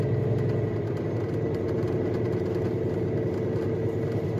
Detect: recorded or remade recorded